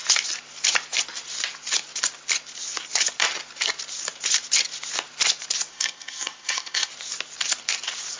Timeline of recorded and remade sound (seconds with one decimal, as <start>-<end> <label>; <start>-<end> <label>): 0.0-5.7 recorded; 5.7-6.9 remade; 6.9-8.2 recorded